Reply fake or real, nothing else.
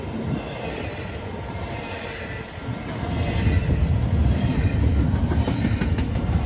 real